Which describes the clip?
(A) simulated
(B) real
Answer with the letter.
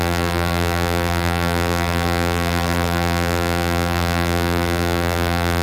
A